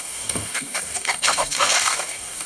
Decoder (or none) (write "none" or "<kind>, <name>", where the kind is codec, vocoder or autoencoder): codec, DAC